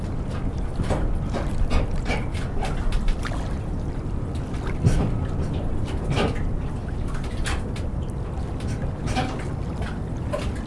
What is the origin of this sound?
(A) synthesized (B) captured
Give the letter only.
B